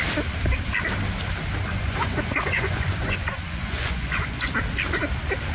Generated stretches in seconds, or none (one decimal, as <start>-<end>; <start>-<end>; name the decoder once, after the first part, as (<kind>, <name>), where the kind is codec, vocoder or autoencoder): 1.7-4.5 (vocoder, Vocos)